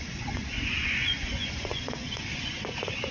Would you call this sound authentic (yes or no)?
no